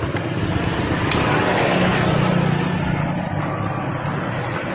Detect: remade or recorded recorded